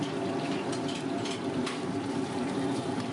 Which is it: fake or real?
fake